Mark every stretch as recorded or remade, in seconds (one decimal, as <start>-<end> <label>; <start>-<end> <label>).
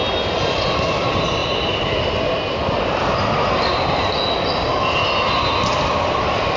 0.0-6.6 recorded